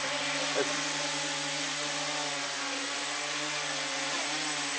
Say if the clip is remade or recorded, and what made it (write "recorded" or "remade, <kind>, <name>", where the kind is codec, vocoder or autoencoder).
recorded